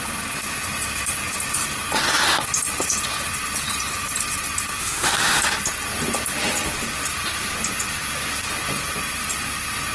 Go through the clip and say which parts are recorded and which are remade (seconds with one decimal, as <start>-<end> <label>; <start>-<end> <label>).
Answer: 0.0-4.8 recorded; 4.8-5.4 remade; 5.4-9.9 recorded